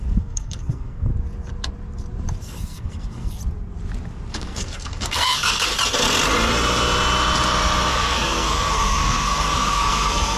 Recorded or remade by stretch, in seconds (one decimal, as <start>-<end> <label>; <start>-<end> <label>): 0.0-1.1 remade; 1.1-2.4 recorded; 2.4-3.4 remade; 3.4-4.3 recorded; 4.3-5.7 remade; 5.7-7.9 recorded; 7.9-10.4 remade

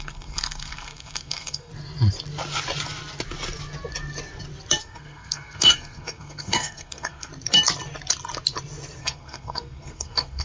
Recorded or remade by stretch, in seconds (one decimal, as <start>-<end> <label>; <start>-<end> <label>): 0.0-1.7 remade; 1.7-4.8 recorded; 4.8-7.3 remade; 7.3-9.0 recorded; 9.0-10.4 remade

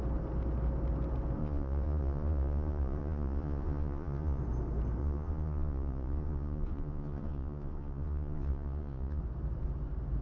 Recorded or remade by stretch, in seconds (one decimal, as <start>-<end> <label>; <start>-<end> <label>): 0.0-1.4 recorded; 1.4-4.4 remade; 4.4-5.0 recorded; 5.0-9.2 remade; 9.2-10.2 recorded

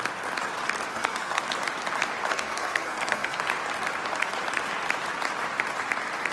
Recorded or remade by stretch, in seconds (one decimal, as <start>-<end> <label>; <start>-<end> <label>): 0.0-0.9 recorded; 0.9-1.4 remade; 1.4-2.3 recorded; 2.3-3.4 remade; 3.4-6.3 recorded

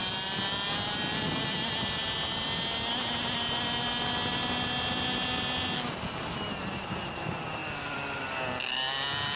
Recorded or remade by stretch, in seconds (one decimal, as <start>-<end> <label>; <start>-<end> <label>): 0.0-9.4 recorded

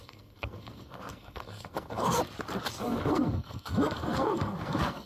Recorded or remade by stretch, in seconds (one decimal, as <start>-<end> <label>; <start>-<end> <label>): 0.0-2.2 remade; 2.2-2.8 recorded; 2.8-5.1 remade

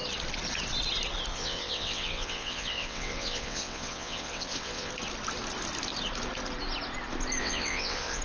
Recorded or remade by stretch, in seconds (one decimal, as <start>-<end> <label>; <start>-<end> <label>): 0.0-1.3 recorded; 1.3-4.9 remade; 4.9-7.4 recorded; 7.4-8.2 remade

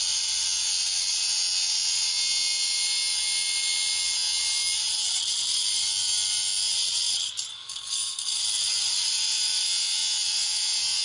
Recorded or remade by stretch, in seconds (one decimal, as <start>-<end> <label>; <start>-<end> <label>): 0.0-7.5 recorded; 7.5-8.4 remade; 8.4-11.0 recorded